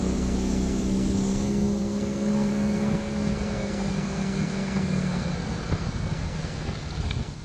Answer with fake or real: fake